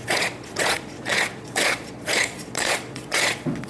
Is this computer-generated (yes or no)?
yes